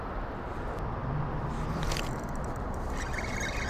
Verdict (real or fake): real